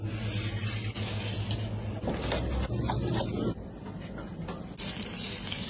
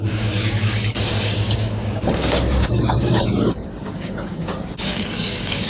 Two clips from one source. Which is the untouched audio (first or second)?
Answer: first